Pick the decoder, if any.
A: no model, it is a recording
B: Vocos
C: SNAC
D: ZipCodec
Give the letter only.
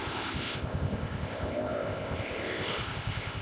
D